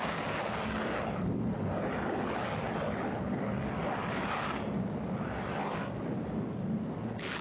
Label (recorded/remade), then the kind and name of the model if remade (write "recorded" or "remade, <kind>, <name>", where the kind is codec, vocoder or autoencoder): recorded